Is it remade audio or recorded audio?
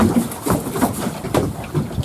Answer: recorded